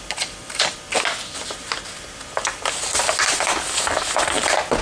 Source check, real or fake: real